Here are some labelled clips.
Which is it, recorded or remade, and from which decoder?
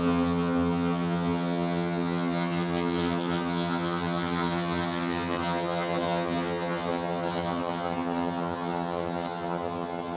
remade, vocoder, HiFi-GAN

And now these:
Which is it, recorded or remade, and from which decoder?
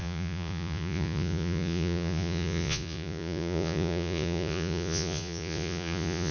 remade, vocoder, Vocos